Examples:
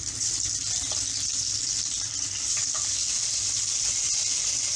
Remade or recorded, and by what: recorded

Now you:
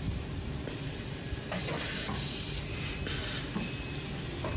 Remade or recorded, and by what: recorded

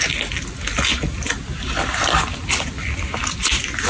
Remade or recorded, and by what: recorded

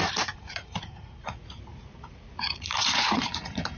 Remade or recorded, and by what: remade, vocoder, Vocos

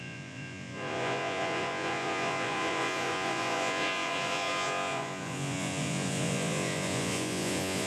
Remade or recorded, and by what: remade, vocoder, Vocos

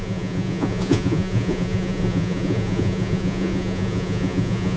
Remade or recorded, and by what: remade, vocoder, Vocos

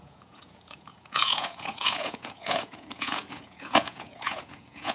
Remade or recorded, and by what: remade, vocoder, Vocos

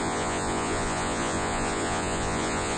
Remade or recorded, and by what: remade, vocoder, Vocos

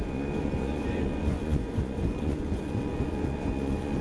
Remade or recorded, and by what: remade, vocoder, Vocos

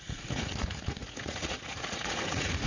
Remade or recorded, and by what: remade, vocoder, Vocos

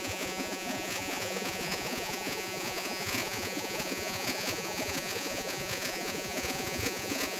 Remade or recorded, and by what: remade, vocoder, Vocos